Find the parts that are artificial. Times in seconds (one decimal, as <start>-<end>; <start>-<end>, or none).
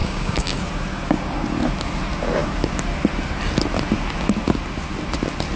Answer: 0.0-0.6